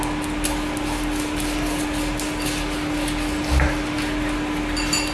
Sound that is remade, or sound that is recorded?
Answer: recorded